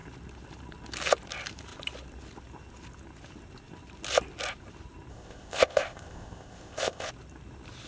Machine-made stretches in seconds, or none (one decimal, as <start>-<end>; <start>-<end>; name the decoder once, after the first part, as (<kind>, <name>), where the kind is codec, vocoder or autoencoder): 5.1-7.1 (codec, ZipCodec)